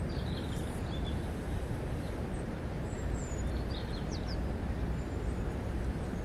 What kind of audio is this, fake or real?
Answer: fake